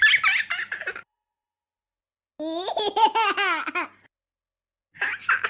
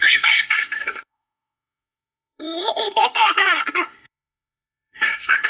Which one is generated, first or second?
second